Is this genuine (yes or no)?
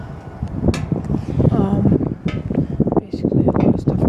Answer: yes